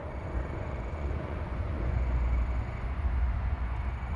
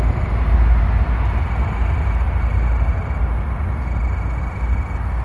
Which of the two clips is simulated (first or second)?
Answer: first